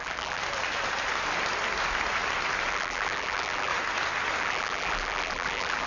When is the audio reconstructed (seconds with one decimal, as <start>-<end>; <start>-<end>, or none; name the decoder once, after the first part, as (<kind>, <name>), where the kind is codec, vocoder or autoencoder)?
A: 0.0-0.4 (vocoder, BigVGAN v2); 2.7-3.7; 4.4-5.9